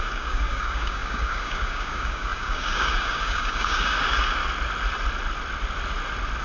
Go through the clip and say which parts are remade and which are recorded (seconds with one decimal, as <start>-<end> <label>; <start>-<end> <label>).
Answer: 0.0-4.4 remade; 4.4-6.4 recorded